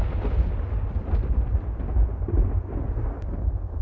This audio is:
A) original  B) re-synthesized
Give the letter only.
A